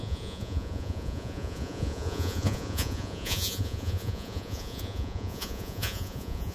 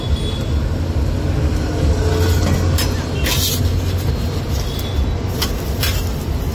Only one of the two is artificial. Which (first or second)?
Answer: first